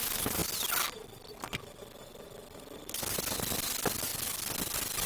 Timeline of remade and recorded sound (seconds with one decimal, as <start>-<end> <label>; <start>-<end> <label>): 0.0-5.1 recorded